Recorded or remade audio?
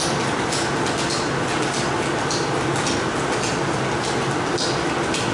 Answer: recorded